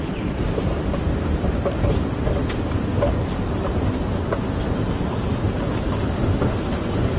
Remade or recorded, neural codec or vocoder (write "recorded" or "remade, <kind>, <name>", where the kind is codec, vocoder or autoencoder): recorded